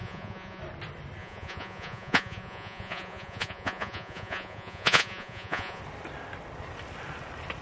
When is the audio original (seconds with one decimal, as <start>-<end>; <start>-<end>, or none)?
0.6-1.2; 5.8-7.6